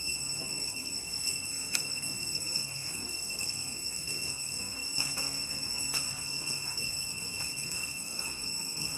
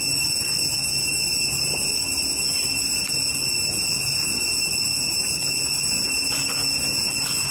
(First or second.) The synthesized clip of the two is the first